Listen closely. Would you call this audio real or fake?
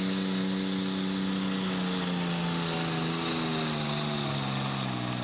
real